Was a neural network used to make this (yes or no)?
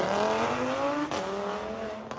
no